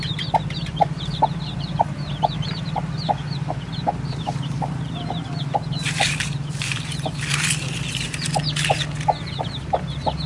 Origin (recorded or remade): remade